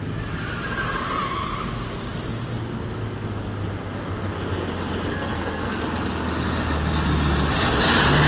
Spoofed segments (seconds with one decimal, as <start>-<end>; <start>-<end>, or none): 5.1-5.8

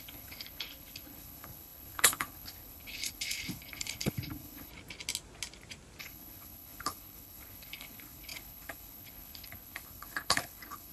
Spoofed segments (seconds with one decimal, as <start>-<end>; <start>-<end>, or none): 0.0-4.7; 6.0-10.9